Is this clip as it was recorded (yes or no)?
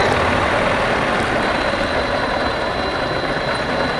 yes